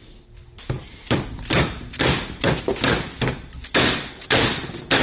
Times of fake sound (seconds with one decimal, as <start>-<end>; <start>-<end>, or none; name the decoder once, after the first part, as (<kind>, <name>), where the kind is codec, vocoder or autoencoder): 0.4-1.2 (vocoder, BigVGAN v2)